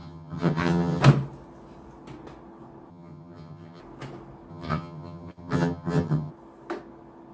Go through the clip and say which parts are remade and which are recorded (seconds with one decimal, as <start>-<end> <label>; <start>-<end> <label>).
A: 0.0-1.0 remade; 1.0-2.9 recorded; 2.9-3.8 remade; 3.8-4.5 recorded; 4.5-6.3 remade; 6.3-7.3 recorded